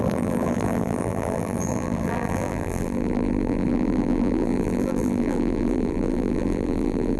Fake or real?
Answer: fake